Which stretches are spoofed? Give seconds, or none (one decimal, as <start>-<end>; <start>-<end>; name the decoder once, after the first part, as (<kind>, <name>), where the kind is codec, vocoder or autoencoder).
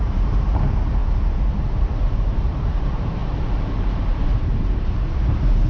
0.0-1.0 (vocoder, BigVGAN v2); 1.8-5.7